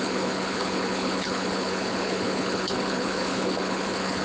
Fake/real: fake